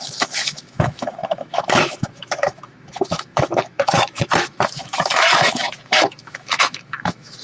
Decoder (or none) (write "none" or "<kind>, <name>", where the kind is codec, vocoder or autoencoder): autoencoder, DAC-VAE